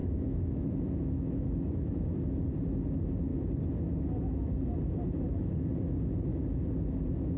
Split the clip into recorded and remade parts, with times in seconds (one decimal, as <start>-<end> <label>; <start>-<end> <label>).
0.0-2.0 remade; 2.0-7.4 recorded